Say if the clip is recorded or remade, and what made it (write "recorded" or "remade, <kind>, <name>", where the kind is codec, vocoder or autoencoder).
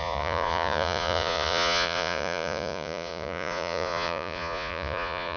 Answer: remade, vocoder, Vocos